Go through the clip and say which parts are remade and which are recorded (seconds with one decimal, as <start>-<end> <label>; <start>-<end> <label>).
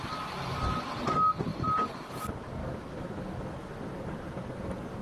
0.0-2.6 recorded; 2.6-3.5 remade; 3.5-5.0 recorded